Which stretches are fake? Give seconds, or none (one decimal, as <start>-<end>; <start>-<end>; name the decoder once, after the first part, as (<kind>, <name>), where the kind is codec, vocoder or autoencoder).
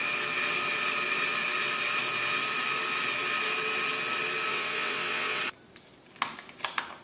4.5-5.4 (vocoder, WaveNeXt)